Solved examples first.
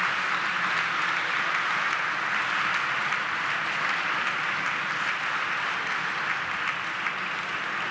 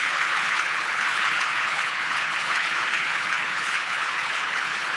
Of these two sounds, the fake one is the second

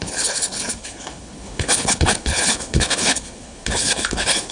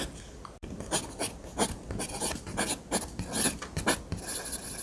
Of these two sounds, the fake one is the first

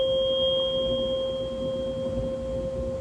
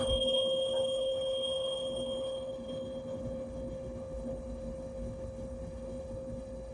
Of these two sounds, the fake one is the second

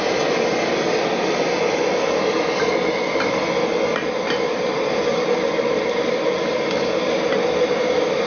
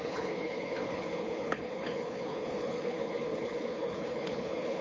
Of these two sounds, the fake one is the second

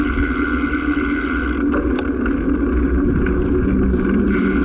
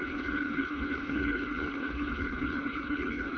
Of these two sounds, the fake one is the second